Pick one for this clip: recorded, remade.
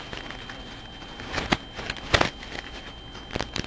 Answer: recorded